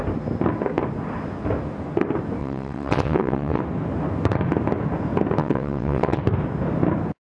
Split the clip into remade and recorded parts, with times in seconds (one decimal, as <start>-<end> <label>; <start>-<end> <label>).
0.0-2.4 recorded; 2.4-3.6 remade; 3.6-5.4 recorded; 5.4-6.2 remade; 6.2-7.2 recorded